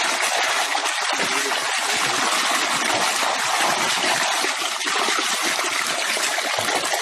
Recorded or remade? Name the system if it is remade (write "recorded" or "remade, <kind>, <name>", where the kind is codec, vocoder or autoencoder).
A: recorded